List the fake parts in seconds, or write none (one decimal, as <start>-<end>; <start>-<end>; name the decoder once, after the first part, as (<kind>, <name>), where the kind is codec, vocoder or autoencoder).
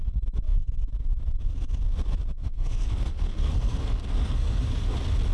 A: 2.4-4.6 (codec, SNAC)